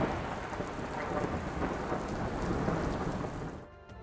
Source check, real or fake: real